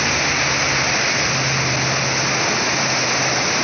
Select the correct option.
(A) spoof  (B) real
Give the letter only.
B